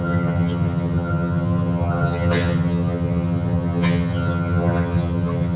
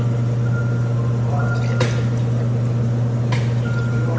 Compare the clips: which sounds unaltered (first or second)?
second